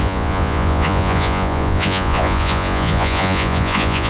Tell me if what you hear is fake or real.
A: fake